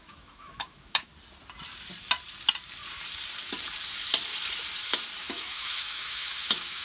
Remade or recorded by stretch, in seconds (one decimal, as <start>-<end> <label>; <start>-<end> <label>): 0.0-1.1 remade; 1.1-5.2 recorded; 5.2-6.8 remade